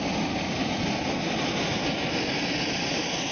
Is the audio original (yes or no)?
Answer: yes